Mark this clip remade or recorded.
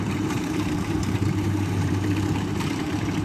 remade